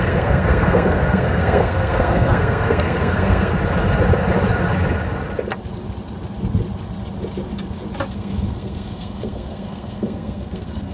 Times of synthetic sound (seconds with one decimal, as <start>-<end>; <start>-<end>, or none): 0.0-3.6; 8.1-10.9